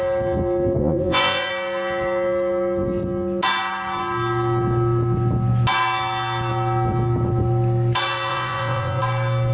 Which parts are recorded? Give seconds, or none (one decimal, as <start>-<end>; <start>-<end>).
0.0-0.8; 1.5-8.3; 9.0-9.5